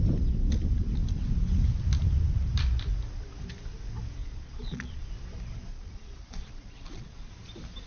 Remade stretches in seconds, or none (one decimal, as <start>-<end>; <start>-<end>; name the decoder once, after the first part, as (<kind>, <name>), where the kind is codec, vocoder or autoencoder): 4.2-5.1 (vocoder, Vocos); 5.7-7.3